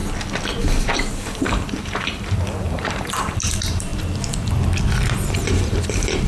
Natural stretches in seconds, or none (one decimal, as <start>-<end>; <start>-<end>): 0.0-0.8; 3.9-5.3